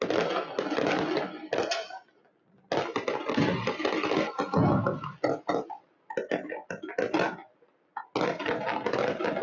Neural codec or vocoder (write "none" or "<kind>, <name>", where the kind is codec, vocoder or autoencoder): none